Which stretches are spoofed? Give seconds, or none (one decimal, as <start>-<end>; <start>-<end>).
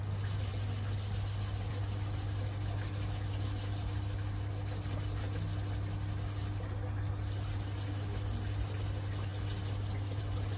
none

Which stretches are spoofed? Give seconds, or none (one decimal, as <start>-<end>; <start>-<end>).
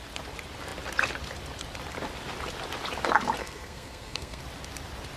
3.4-4.4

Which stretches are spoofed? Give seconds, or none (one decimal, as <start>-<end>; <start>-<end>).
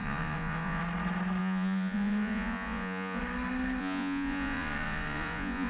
0.0-0.8; 1.4-3.2; 3.8-5.7